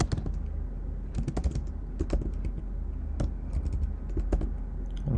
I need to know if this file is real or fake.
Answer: real